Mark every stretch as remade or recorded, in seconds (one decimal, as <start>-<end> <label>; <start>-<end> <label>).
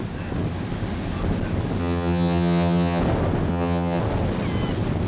0.0-1.8 recorded; 1.8-3.0 remade; 3.0-3.5 recorded; 3.5-4.0 remade; 4.0-5.1 recorded